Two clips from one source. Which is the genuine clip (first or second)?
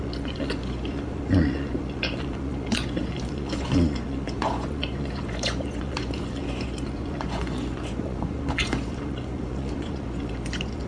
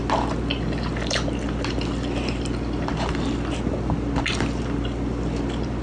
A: second